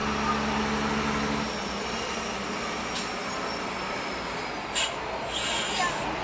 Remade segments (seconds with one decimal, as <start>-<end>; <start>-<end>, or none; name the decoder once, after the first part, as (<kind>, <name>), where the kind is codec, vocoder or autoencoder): none